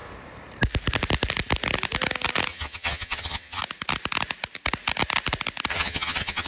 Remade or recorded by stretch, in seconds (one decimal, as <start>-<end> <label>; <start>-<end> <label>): 0.0-2.5 recorded; 2.5-3.6 remade; 3.6-5.7 recorded; 5.7-6.5 remade